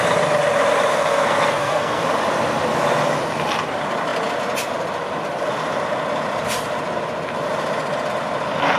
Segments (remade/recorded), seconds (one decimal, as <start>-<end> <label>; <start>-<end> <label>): 0.0-0.9 recorded; 0.9-2.0 remade; 2.0-8.8 recorded